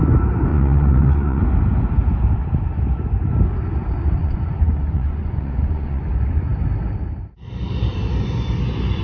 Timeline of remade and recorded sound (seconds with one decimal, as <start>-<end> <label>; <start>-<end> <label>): 0.0-0.5 recorded; 0.5-1.4 remade; 1.4-4.2 recorded; 4.2-6.0 remade; 6.0-9.0 recorded

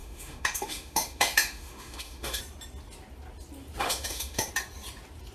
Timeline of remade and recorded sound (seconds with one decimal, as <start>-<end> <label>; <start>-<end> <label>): 0.0-2.4 remade; 2.4-3.8 recorded; 3.8-4.5 remade; 4.5-5.3 recorded

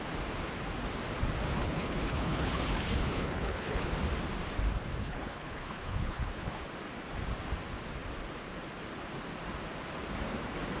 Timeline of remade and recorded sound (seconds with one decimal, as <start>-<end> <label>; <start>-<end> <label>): 0.0-1.5 recorded; 1.5-3.9 remade; 3.9-5.0 recorded; 5.0-6.6 remade; 6.6-10.8 recorded

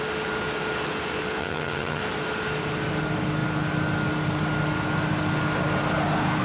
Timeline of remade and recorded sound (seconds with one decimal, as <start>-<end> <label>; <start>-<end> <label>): 0.0-1.4 recorded; 1.4-2.0 remade; 2.0-6.4 recorded